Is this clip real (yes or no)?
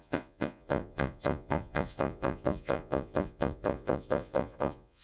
no